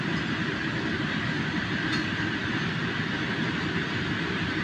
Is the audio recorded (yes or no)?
yes